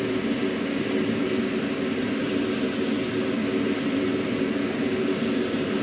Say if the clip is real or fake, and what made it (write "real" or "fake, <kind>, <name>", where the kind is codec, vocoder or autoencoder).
real